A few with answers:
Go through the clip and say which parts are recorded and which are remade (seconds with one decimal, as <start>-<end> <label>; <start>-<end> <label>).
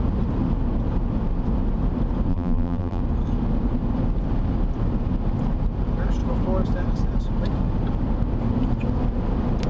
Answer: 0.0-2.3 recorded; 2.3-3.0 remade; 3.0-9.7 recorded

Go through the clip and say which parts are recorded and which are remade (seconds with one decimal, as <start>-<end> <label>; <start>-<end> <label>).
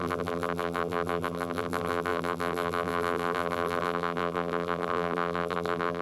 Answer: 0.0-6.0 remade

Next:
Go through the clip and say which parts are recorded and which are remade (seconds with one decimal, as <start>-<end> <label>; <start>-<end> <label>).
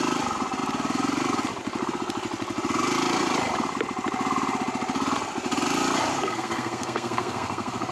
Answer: 0.0-6.1 recorded; 6.1-7.9 remade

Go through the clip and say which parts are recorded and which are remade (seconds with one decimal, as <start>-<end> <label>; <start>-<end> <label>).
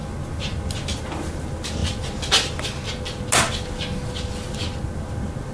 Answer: 0.0-5.5 recorded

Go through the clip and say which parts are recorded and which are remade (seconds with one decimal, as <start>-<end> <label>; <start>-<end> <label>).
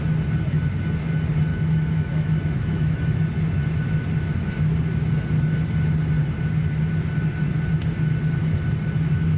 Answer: 0.0-1.5 recorded; 1.5-3.2 remade; 3.2-9.4 recorded